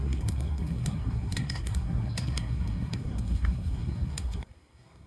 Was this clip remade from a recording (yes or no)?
yes